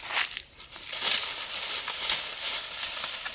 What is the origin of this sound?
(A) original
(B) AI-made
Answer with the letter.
A